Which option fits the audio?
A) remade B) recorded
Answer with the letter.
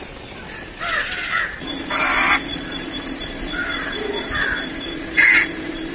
B